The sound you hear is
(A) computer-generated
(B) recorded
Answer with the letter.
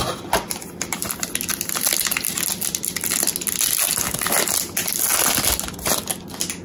B